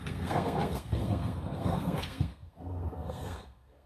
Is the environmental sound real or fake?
fake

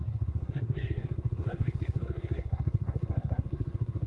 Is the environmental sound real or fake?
fake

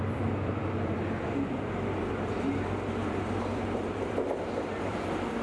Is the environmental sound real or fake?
fake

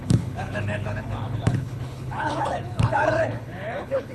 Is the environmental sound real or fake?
fake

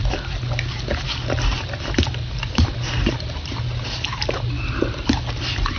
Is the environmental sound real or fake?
real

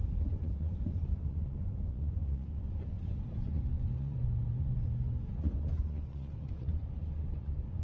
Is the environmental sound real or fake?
fake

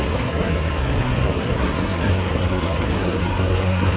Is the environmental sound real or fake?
fake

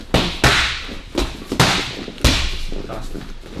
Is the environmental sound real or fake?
real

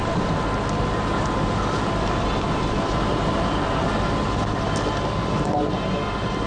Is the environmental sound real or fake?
real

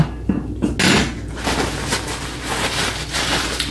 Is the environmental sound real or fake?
real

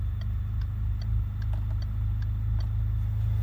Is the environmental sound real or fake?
real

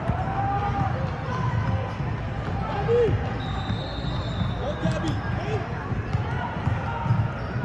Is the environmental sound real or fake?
real